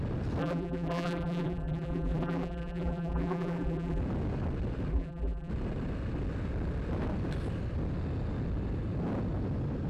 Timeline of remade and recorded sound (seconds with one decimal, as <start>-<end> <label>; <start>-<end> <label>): 0.0-0.4 recorded; 0.4-4.0 remade; 4.0-4.9 recorded; 4.9-5.5 remade; 5.5-9.9 recorded